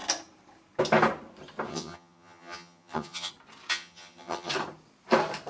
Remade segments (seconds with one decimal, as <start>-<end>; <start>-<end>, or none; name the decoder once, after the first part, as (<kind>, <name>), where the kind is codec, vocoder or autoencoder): 1.7-3.3 (vocoder, HiFi-GAN); 3.7-4.5